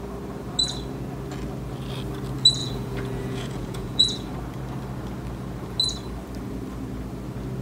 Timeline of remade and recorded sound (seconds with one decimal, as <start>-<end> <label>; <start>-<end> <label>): 0.0-2.6 recorded; 2.6-4.3 remade; 4.3-7.6 recorded